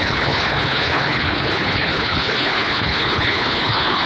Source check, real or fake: fake